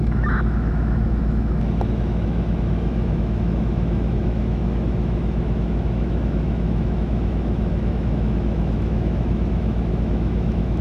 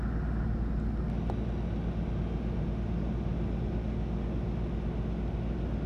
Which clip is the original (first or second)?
second